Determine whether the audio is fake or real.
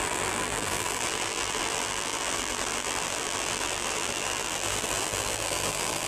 fake